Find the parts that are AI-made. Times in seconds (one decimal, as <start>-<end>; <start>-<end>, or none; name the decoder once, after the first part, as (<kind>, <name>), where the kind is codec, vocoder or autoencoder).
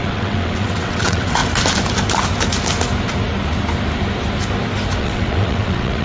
0.0-1.4 (vocoder, WaveNeXt); 5.0-6.0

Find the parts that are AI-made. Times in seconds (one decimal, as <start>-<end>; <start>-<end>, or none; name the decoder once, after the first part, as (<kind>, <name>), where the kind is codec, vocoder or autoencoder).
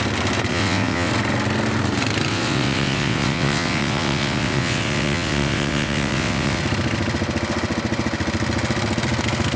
0.5-1.1 (vocoder, WaveNeXt); 2.3-6.6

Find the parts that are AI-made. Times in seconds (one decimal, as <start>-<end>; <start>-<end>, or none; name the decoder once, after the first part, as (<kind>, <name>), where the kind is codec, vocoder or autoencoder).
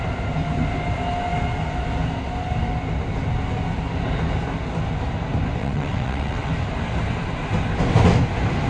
5.6-6.5 (vocoder, WaveNeXt)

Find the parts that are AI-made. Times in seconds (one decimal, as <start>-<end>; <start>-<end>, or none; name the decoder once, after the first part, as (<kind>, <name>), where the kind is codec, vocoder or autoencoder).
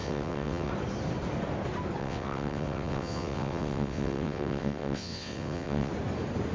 0.0-0.7 (vocoder, WaveNeXt); 2.0-5.9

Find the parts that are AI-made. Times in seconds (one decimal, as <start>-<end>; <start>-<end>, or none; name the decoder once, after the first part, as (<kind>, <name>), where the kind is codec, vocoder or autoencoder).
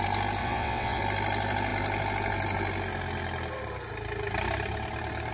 0.4-1.0 (vocoder, WaveNeXt)